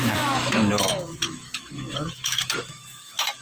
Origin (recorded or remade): remade